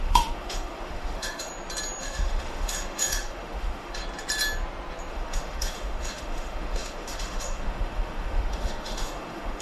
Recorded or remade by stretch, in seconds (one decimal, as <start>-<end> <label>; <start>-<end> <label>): 0.0-1.5 remade; 1.5-2.0 recorded; 2.0-4.0 remade; 4.0-5.1 recorded; 5.1-9.6 remade